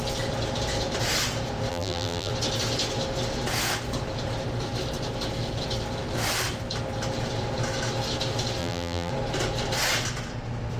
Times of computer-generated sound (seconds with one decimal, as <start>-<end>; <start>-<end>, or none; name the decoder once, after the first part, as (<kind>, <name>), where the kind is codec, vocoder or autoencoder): 1.7-2.3 (vocoder, BigVGAN v2); 8.6-9.1